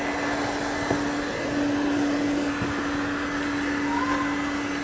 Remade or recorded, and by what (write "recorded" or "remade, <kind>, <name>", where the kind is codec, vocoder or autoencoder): recorded